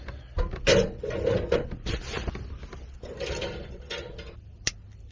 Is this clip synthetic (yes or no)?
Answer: no